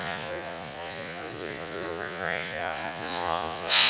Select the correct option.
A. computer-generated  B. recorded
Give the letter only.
A